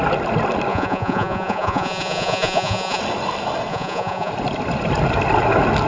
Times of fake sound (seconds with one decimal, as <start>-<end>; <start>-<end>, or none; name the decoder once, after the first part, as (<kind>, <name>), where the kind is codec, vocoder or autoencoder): 0.7-3.0 (vocoder, Vocos); 3.7-4.3